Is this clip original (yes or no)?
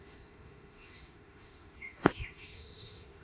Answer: no